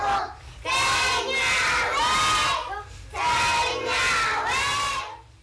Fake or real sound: real